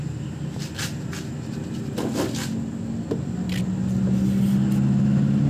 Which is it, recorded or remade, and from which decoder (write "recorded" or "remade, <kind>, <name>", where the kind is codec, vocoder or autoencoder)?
recorded